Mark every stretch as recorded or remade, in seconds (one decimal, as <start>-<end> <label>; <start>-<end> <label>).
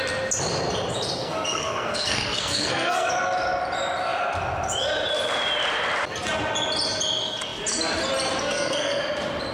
0.0-1.2 recorded; 1.2-3.1 remade; 3.1-8.4 recorded; 8.4-9.0 remade; 9.0-9.5 recorded